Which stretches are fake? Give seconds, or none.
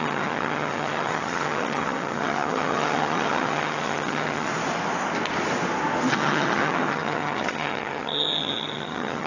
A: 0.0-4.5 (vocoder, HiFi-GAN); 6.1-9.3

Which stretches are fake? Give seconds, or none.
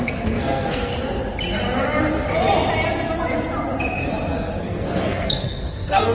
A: 0.0-0.9 (codec, SNAC); 4.6-6.1